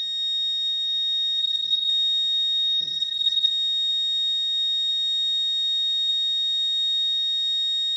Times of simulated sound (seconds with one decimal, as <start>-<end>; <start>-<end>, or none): 1.4-1.9; 2.8-3.5